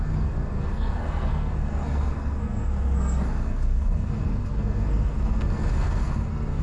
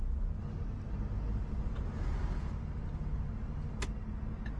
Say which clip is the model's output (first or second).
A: first